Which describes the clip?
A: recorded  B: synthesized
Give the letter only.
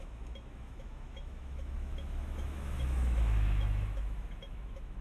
B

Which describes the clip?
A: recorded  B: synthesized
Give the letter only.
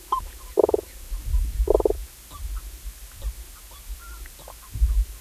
A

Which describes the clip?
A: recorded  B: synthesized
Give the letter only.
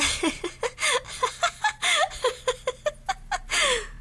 A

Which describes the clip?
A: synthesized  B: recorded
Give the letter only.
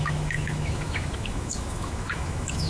A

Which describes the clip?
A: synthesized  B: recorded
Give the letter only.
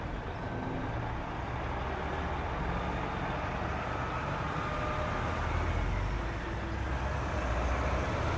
B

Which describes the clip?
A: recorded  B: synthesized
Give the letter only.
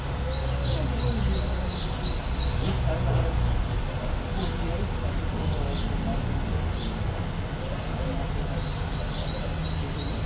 A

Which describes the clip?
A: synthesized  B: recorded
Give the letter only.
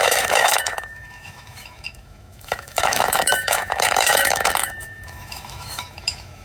A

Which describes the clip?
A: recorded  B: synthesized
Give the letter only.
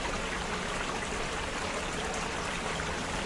A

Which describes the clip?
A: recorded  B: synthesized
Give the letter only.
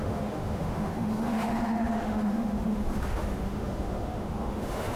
B